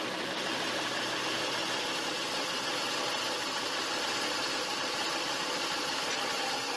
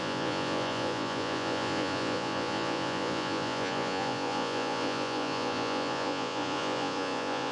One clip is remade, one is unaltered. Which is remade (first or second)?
second